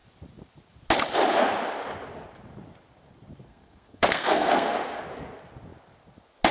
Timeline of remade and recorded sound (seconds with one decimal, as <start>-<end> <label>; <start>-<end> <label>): 0.0-3.5 recorded; 3.5-5.0 remade; 5.0-6.5 recorded